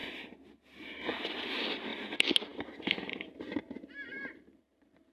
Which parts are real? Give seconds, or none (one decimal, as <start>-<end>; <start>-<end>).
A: 0.0-4.1

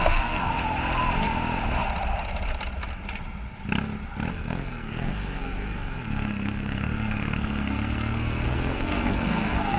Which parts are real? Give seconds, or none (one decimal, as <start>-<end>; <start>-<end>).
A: 0.5-4.3

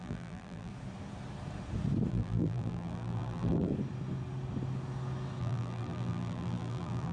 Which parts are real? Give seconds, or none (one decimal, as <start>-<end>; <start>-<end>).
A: 0.7-2.1; 3.7-5.4

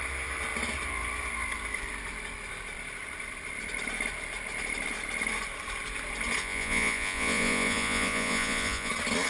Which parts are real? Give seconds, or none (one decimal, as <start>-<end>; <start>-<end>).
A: 0.0-6.4; 8.9-9.3